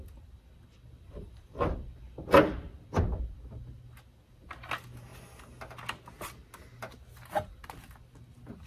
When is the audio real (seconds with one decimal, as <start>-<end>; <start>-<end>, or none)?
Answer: 0.0-8.7